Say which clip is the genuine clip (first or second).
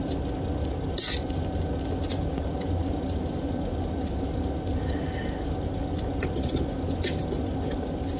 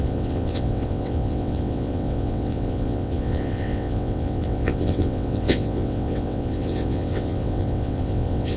first